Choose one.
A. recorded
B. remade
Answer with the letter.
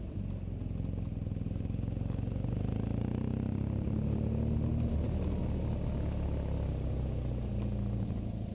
A